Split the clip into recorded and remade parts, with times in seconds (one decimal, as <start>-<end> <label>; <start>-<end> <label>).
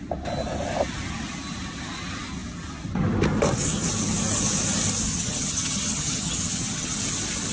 0.0-5.1 recorded; 5.1-7.0 remade; 7.0-7.5 recorded